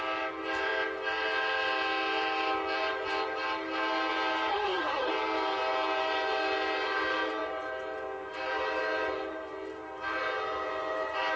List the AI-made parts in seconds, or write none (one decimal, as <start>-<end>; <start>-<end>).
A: 4.5-5.1